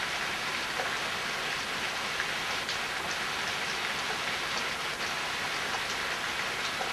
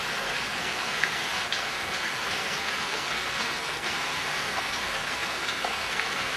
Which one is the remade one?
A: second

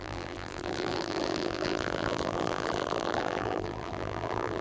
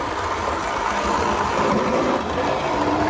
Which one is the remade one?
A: first